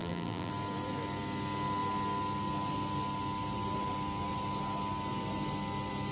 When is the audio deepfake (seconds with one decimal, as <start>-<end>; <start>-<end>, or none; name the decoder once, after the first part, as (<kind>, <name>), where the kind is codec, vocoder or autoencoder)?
0.0-0.5 (vocoder, BigVGAN v2)